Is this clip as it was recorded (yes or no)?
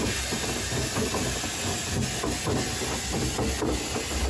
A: yes